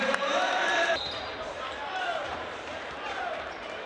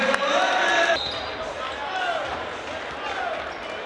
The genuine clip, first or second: second